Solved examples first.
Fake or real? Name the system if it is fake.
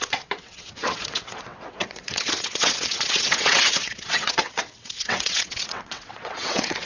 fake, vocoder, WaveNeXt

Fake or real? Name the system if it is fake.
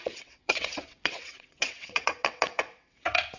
fake, vocoder, WaveNeXt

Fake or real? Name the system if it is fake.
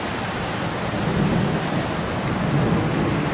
real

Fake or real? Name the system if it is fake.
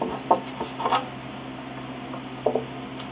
real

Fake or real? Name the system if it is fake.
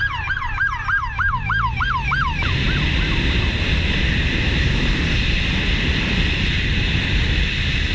real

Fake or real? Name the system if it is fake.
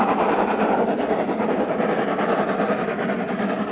real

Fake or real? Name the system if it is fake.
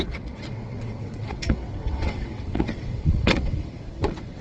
fake, vocoder, WaveNeXt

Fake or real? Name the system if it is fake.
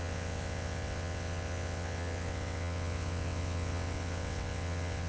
fake, vocoder, WaveNeXt